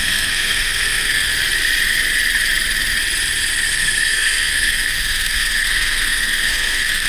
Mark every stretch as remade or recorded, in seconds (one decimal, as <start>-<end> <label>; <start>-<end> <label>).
0.0-1.3 remade; 1.3-3.7 recorded; 3.7-7.1 remade